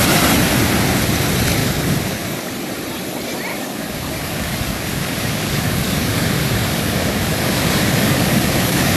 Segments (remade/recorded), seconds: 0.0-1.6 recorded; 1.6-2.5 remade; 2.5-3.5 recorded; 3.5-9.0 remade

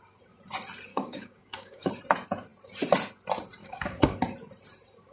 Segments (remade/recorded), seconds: 0.0-0.9 recorded; 0.9-1.9 remade; 1.9-3.6 recorded; 3.6-4.2 remade; 4.2-5.1 recorded

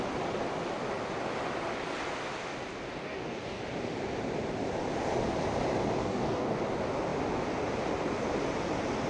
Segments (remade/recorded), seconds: 0.0-3.0 recorded; 3.0-3.6 remade; 3.6-6.0 recorded; 6.0-6.6 remade; 6.6-9.1 recorded

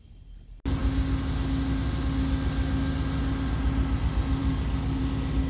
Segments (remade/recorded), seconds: 0.0-4.4 recorded; 4.4-5.0 remade; 5.0-5.5 recorded

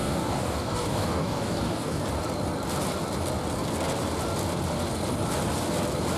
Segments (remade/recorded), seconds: 0.0-2.0 remade; 2.0-6.2 recorded